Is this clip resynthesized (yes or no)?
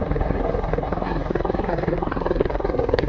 yes